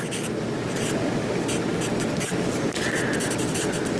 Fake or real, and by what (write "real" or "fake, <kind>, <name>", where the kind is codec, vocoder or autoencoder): real